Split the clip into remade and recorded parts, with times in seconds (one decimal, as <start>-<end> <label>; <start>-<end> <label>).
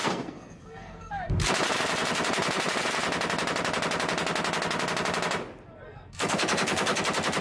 0.0-1.3 remade; 1.3-5.7 recorded; 5.7-7.0 remade; 7.0-7.4 recorded